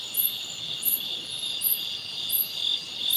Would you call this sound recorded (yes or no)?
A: yes